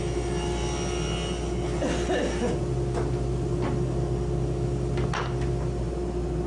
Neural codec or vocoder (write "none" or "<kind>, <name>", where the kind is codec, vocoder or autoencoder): none